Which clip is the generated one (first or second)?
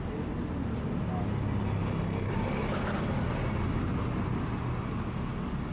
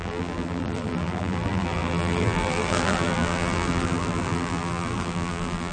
second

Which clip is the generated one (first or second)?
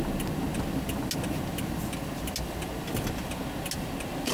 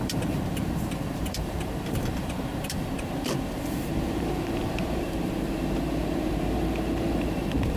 second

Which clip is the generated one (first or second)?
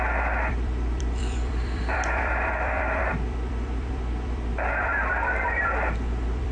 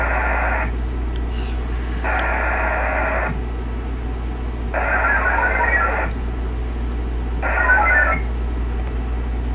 first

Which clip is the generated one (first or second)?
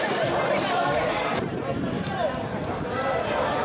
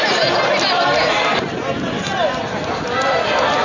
first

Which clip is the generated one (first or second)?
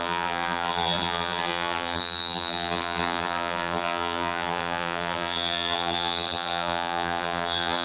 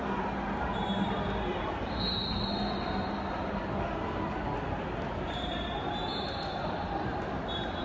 first